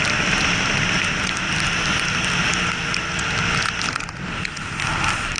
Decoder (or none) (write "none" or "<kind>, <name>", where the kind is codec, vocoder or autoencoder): none